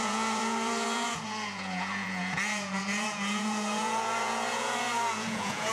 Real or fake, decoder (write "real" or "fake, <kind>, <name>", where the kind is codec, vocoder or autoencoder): fake, vocoder, Vocos